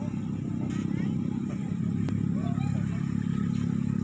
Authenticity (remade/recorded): recorded